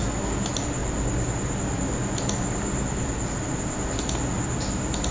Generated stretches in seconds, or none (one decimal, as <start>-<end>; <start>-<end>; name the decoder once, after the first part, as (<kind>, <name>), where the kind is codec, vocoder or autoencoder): none